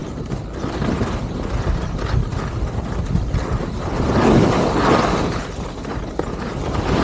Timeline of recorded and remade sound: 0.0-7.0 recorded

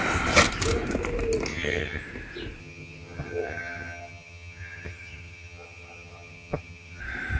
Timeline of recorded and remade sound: 0.0-1.5 recorded; 1.5-2.0 remade; 2.0-2.6 recorded; 2.6-7.0 remade; 7.0-7.4 recorded

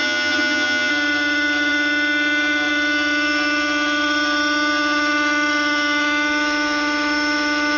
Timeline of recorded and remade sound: 0.0-0.9 remade; 0.9-7.8 recorded

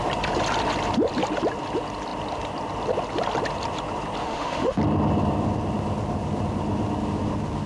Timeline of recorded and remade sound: 0.0-4.2 recorded; 4.2-4.8 remade; 4.8-7.7 recorded

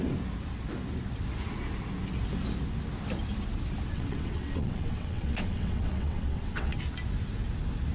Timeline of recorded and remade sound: 0.0-3.9 recorded; 3.9-6.8 remade; 6.8-7.9 recorded

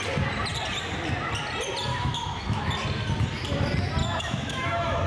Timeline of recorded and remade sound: 0.0-1.9 recorded; 1.9-2.7 remade; 2.7-4.0 recorded; 4.0-5.1 remade

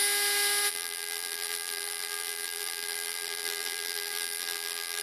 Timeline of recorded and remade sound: 0.0-0.7 recorded; 0.7-5.0 remade